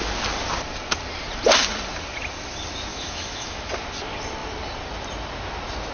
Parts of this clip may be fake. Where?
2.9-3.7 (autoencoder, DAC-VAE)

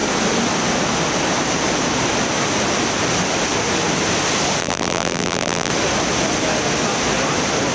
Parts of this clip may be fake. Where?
4.6-5.7 (vocoder, BigVGAN v2)

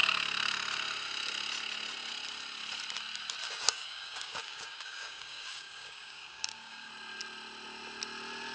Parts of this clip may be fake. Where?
3.4-6.9 (codec, DAC)

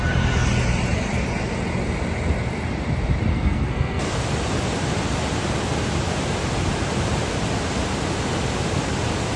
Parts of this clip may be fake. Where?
3.3-4.1 (codec, SNAC)